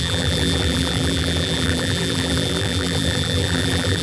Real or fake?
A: fake